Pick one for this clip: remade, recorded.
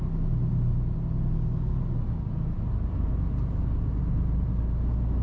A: recorded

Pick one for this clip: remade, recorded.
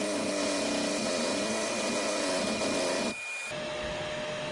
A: recorded